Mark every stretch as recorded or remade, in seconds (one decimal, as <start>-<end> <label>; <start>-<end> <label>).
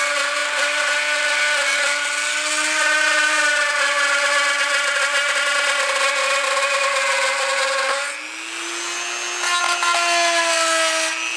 0.0-11.4 recorded